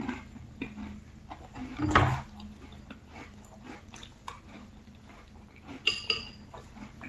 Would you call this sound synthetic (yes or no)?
no